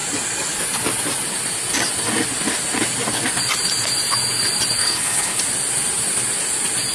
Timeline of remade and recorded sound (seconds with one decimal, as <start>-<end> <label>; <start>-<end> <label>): 0.0-4.8 recorded; 4.8-5.4 remade; 5.4-6.9 recorded